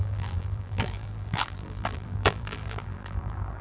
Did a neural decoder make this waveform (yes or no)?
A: yes